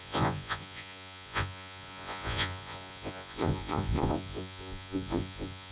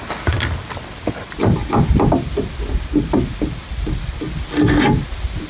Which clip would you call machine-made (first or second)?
first